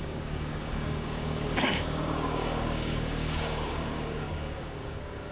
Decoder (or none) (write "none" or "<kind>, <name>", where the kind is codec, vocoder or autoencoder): codec, DAC